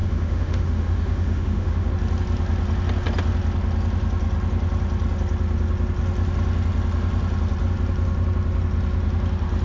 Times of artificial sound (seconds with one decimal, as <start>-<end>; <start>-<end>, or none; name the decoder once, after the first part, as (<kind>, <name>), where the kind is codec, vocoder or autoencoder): 0.0-1.9 (autoencoder, DAC-VAE)